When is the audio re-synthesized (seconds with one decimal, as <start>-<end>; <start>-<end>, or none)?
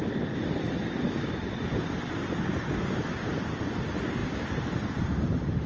none